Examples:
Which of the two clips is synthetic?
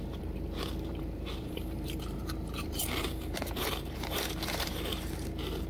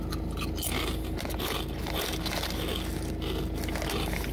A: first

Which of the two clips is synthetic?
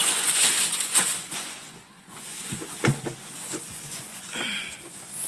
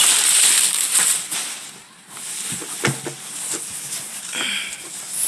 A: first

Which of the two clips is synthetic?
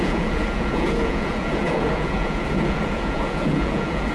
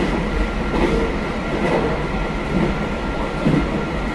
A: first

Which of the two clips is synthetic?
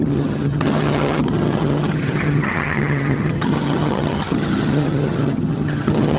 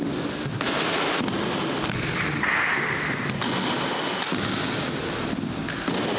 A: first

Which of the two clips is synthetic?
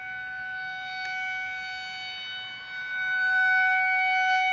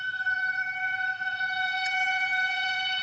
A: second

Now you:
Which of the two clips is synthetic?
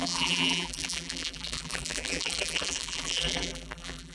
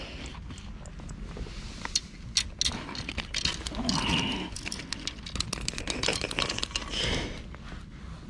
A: first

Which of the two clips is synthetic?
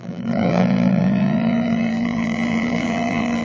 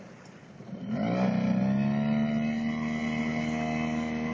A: first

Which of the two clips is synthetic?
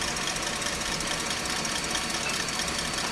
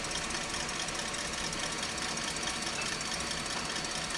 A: first